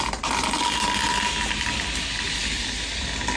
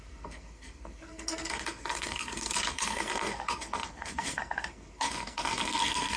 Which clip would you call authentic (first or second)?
first